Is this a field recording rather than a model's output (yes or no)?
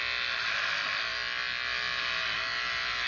yes